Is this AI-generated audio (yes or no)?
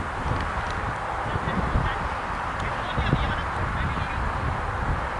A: no